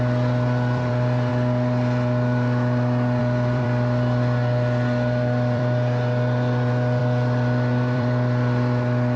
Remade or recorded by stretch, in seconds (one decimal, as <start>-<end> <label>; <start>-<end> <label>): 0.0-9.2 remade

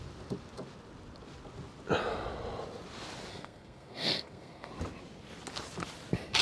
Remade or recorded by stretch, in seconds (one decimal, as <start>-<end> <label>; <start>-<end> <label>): 0.0-3.3 recorded; 3.3-4.7 remade; 4.7-6.4 recorded

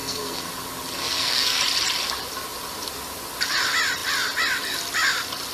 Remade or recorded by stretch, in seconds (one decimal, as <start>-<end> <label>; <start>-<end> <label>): 0.0-0.5 remade; 0.5-1.0 recorded; 1.0-1.6 remade; 1.6-5.5 recorded

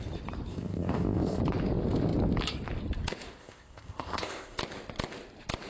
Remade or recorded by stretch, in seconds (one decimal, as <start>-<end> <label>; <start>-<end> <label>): 0.0-0.5 recorded; 0.5-1.4 remade; 1.4-3.4 recorded; 3.4-4.6 remade; 4.6-5.7 recorded